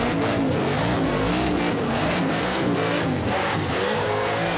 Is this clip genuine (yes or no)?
no